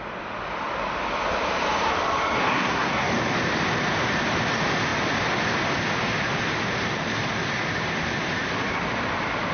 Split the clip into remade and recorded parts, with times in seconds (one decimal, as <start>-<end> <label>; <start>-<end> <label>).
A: 0.0-2.4 recorded; 2.4-3.1 remade; 3.1-9.5 recorded